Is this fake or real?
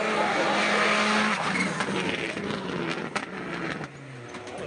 real